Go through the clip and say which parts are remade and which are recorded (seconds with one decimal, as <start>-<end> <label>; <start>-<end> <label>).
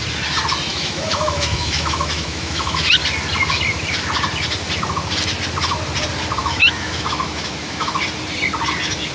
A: 0.0-0.7 recorded; 0.7-2.9 remade; 2.9-6.4 recorded; 6.4-8.0 remade; 8.0-9.1 recorded